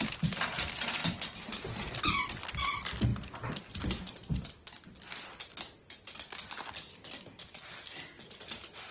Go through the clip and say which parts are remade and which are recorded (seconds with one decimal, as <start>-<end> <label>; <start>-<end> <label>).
0.0-8.9 recorded